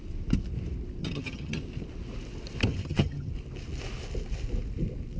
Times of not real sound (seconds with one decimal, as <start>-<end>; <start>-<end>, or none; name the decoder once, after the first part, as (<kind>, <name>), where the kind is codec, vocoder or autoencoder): 1.0-1.6 (vocoder, HiFi-GAN); 2.7-3.3